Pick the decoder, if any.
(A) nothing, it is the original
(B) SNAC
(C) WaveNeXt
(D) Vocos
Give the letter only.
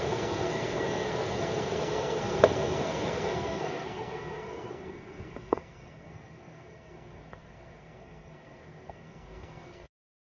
B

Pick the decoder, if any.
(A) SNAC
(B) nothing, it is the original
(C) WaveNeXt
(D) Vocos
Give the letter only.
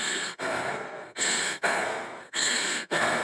A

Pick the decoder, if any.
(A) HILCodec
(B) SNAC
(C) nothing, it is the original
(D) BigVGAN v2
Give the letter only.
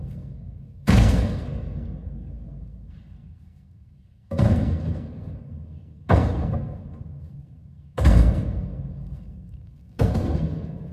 B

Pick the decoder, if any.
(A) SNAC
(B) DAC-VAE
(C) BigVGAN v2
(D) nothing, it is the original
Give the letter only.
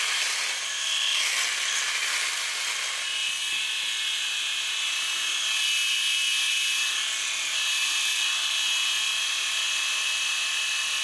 D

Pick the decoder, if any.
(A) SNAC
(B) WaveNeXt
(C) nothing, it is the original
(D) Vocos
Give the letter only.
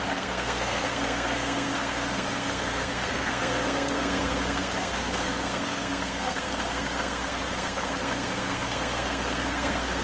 A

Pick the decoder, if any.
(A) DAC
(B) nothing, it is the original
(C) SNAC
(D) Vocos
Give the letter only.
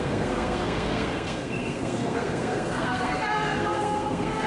C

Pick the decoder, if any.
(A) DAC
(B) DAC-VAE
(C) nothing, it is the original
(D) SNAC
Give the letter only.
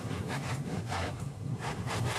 D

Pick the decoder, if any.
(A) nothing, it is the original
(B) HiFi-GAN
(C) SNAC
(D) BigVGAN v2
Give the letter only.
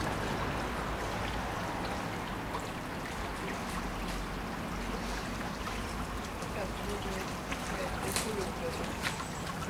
A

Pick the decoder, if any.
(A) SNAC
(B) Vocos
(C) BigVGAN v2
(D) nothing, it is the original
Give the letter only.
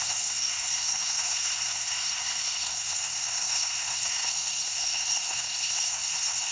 A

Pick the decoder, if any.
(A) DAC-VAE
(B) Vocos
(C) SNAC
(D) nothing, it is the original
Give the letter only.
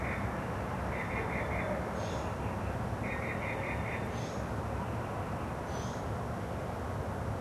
D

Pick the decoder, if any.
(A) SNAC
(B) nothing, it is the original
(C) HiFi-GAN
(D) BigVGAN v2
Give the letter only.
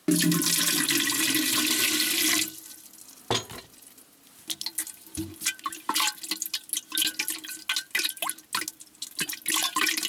B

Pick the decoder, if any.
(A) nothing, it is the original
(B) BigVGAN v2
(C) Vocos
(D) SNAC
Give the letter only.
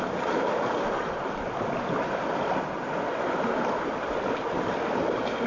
A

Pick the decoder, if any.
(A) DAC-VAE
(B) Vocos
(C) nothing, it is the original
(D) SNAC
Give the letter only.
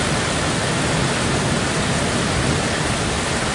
C